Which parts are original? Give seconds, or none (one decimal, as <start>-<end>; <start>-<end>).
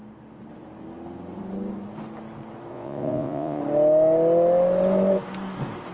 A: 0.0-2.7; 3.6-5.9